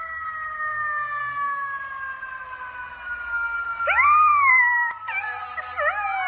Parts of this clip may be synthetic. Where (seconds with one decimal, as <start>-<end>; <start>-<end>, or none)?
none